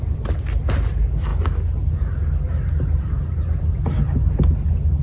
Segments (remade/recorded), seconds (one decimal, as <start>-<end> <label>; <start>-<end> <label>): 0.0-5.0 recorded